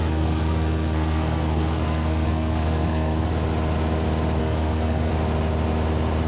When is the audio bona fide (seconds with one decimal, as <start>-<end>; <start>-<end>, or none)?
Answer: 3.3-4.4; 5.1-6.3